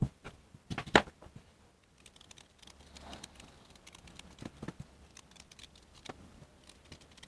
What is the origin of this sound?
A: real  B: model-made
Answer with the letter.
B